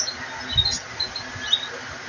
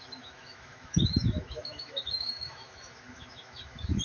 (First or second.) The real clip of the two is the first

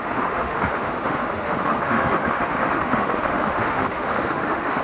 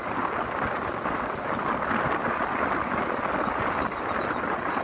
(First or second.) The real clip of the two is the second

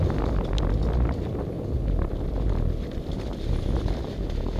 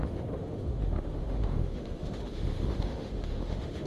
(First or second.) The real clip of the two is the first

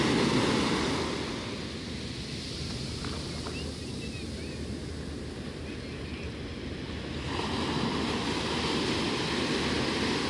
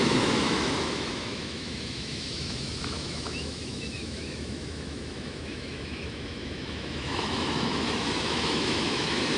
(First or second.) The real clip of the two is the first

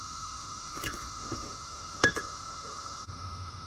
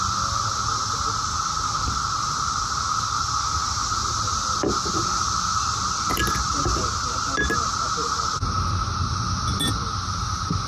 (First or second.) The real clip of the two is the second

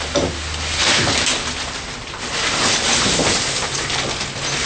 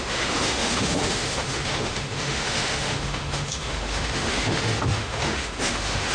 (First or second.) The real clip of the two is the first